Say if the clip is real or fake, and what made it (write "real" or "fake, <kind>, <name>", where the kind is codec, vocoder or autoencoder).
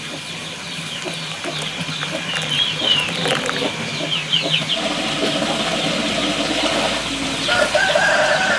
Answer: real